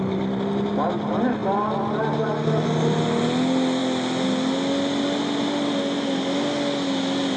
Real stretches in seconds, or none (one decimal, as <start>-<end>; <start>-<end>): 0.0-7.4